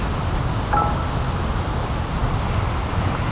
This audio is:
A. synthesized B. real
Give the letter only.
B